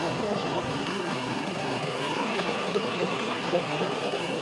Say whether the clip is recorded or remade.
remade